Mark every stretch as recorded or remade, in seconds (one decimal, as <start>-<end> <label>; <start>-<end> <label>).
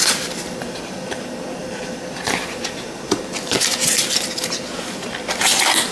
0.0-5.9 recorded